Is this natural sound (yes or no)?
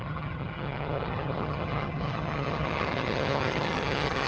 no